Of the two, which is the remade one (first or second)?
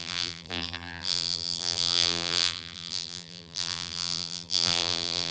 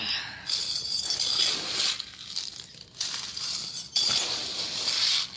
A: first